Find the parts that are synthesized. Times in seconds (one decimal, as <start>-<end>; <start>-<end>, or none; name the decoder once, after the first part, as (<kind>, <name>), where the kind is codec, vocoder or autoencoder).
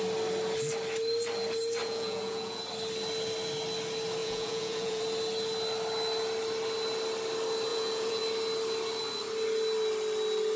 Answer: 1.8-2.6 (vocoder, Vocos); 4.2-5.0; 7.7-8.2